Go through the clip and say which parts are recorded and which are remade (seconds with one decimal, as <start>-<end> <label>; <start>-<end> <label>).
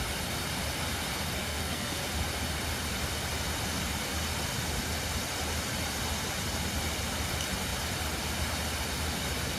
0.0-1.4 recorded; 1.4-2.0 remade; 2.0-9.6 recorded